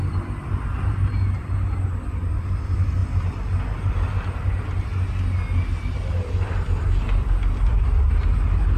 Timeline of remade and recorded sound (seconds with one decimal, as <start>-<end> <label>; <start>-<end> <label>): 0.0-8.8 recorded